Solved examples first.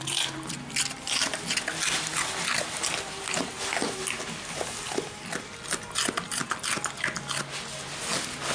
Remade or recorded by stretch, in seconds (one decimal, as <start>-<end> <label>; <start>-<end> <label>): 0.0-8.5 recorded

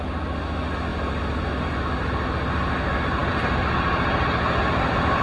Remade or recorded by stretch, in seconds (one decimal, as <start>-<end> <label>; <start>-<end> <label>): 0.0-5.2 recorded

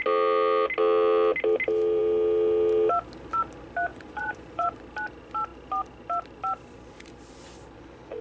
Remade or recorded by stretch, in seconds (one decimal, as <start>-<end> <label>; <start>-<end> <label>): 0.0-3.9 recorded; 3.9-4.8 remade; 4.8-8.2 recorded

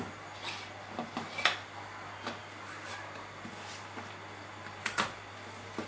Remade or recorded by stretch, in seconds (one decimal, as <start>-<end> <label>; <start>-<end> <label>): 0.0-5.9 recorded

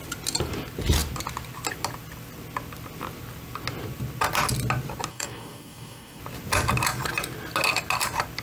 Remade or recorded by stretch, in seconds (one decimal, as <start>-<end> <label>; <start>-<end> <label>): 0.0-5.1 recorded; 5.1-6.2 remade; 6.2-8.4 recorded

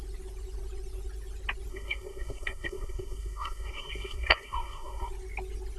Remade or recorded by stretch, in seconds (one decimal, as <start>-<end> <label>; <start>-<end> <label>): 0.0-1.7 recorded; 1.7-5.1 remade; 5.1-5.8 recorded

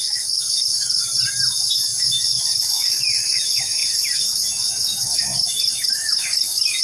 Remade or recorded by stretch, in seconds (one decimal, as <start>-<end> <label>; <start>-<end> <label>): 0.0-1.0 remade; 1.0-1.5 recorded; 1.5-6.8 remade